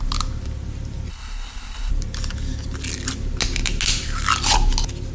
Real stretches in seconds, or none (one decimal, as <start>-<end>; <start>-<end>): 0.0-1.1; 1.9-5.1